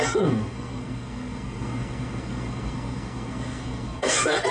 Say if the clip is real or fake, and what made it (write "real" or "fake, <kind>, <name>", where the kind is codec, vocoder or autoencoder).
fake, codec, SNAC